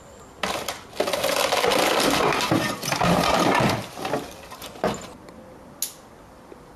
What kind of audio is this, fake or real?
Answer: real